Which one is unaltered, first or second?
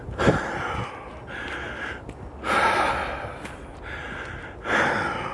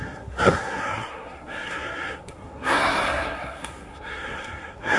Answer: first